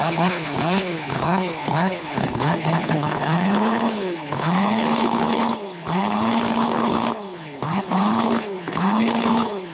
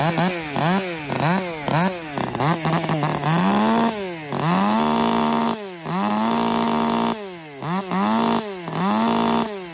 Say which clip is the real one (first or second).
second